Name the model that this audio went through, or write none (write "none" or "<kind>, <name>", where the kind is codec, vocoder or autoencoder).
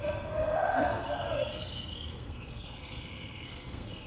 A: codec, SNAC